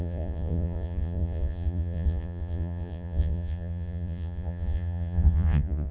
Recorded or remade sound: remade